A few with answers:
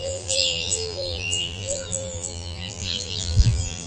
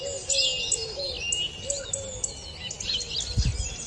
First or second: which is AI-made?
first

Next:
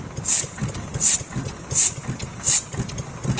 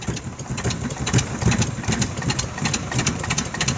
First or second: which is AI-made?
second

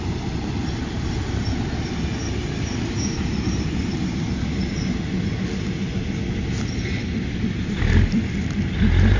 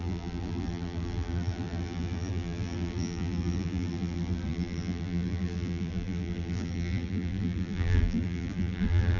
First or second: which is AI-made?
second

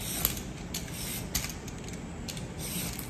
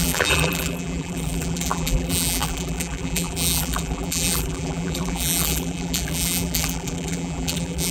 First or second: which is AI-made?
second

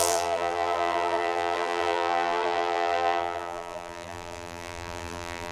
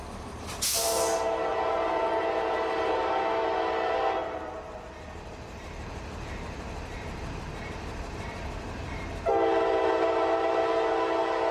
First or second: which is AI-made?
first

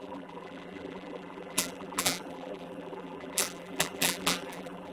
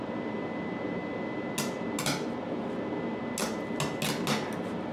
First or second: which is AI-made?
first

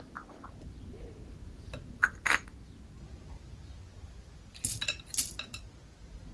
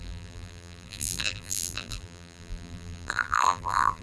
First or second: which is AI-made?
second